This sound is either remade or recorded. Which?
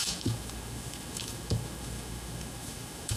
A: remade